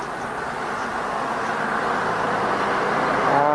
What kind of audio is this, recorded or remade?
recorded